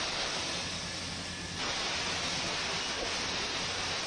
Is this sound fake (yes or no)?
no